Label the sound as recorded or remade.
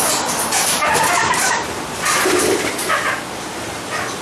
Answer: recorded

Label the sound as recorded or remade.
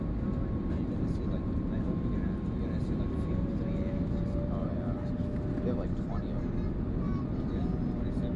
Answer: recorded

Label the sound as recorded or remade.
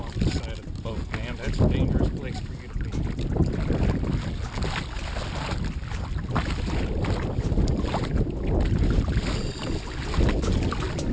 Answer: recorded